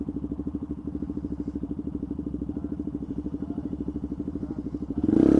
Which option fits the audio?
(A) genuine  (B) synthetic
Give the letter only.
B